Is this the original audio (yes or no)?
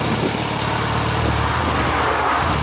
yes